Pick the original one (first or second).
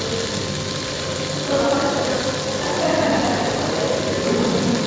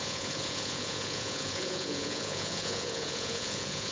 first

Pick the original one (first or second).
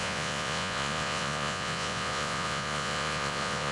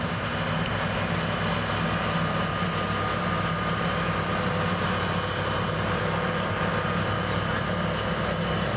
second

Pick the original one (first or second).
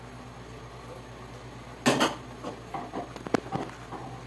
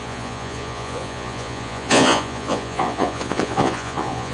first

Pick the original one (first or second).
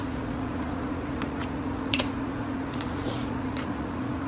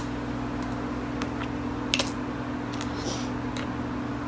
second